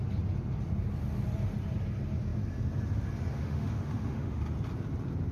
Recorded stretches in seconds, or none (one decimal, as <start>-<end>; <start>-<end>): 0.0-3.3; 4.4-5.3